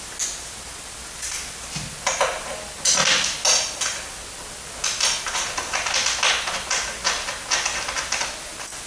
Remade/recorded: recorded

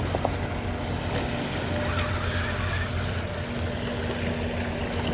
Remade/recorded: recorded